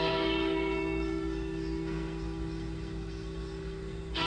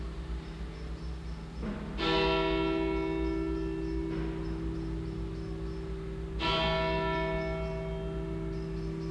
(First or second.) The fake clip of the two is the first